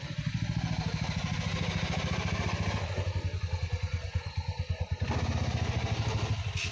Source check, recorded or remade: recorded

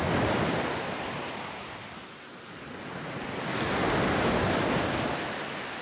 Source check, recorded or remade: recorded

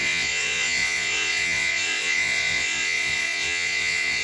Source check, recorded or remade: remade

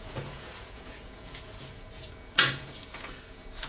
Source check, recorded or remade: remade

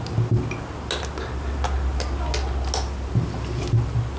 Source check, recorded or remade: recorded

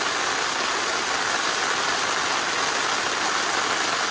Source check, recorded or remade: recorded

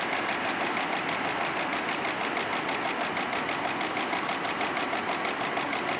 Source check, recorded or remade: recorded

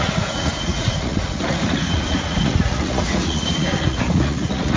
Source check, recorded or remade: remade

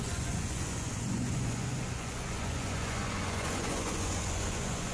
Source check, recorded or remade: remade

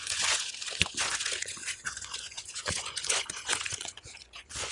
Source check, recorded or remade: remade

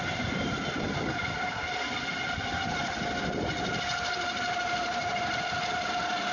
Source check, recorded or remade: recorded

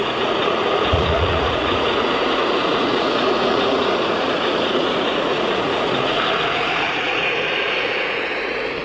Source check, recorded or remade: remade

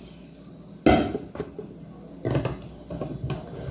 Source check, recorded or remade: recorded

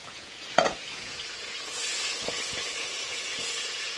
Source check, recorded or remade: remade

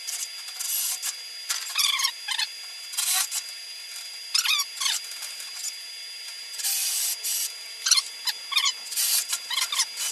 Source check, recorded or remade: recorded